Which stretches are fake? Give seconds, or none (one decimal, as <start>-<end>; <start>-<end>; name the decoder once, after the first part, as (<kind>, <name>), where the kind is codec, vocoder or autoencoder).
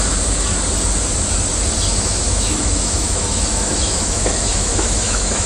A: 1.9-5.5 (autoencoder, DAC-VAE)